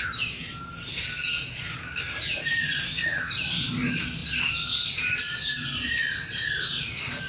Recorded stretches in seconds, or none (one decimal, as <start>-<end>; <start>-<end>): 0.0-7.3